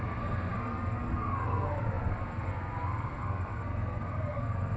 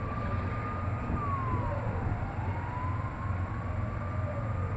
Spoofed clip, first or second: first